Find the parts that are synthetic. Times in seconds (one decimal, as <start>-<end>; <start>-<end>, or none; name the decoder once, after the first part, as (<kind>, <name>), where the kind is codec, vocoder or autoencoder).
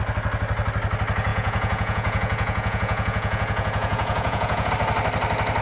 1.3-4.7 (vocoder, Vocos)